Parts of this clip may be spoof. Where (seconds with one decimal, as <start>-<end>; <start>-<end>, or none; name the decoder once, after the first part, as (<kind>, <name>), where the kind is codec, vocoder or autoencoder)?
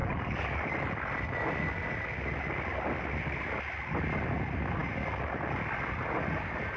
none